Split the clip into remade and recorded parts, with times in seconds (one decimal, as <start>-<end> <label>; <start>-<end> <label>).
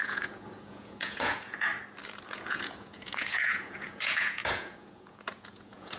0.0-1.7 remade; 1.7-2.3 recorded; 2.3-6.0 remade